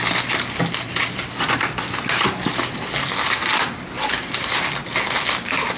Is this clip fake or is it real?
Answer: real